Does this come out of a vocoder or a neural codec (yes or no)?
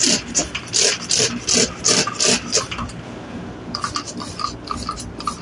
yes